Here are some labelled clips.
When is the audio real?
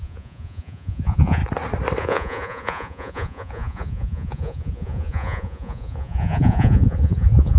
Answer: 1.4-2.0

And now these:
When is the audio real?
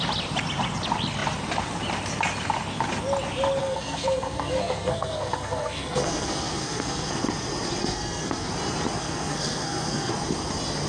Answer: 0.0-3.6; 7.1-7.8; 8.5-9.0; 10.1-10.9